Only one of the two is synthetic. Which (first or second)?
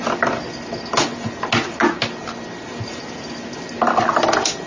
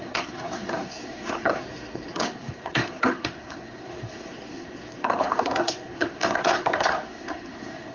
second